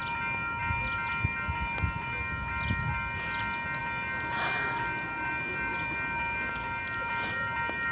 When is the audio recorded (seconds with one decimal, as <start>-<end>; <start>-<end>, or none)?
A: 0.0-7.9